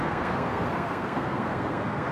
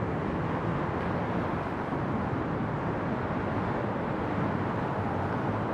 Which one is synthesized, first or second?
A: first